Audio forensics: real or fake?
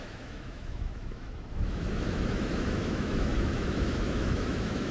fake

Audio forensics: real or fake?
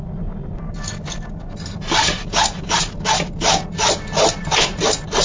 real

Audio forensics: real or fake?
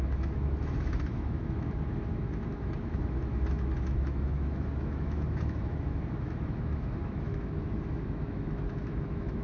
fake